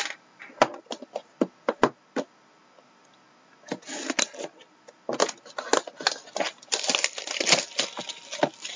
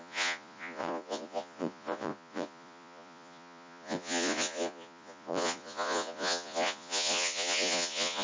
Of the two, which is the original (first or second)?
first